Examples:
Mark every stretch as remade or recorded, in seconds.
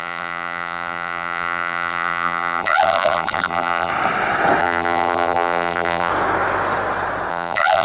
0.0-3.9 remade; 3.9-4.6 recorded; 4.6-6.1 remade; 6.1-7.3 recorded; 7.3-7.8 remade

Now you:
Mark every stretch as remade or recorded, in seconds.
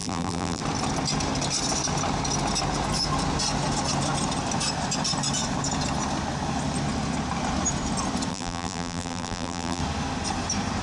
0.0-0.6 remade; 0.6-8.3 recorded; 8.3-9.8 remade; 9.8-10.8 recorded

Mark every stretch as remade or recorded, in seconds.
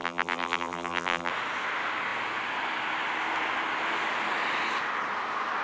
0.0-1.3 remade; 1.3-5.6 recorded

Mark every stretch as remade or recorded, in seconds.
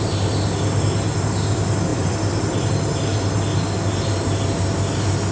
0.0-1.9 recorded; 1.9-2.7 remade; 2.7-5.3 recorded